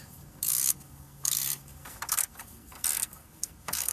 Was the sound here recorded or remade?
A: remade